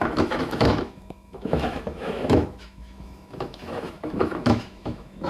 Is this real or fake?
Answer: fake